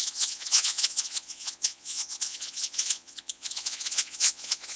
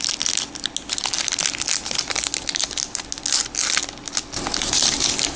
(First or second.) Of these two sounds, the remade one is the first